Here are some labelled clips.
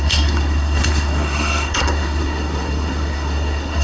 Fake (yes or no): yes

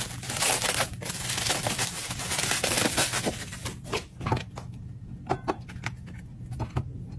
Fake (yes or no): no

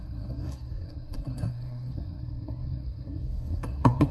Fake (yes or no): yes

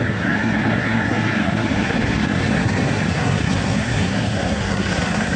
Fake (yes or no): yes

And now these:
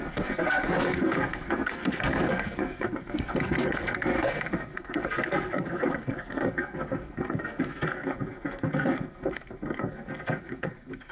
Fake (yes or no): yes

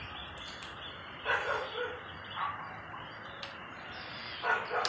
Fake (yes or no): no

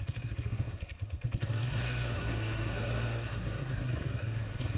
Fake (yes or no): yes